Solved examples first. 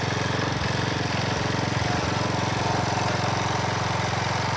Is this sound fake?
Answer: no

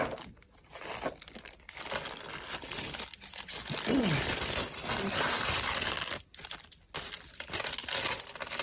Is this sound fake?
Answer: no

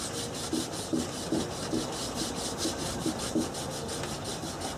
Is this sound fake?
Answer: no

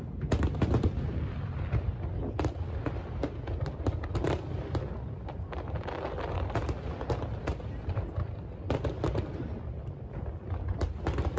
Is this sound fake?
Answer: no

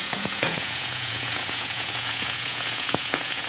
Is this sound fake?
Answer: yes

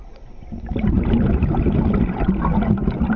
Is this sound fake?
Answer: no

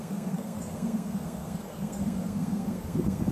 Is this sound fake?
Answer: yes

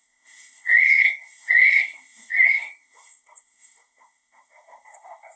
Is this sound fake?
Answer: yes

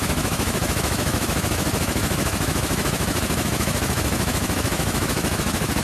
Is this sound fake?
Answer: yes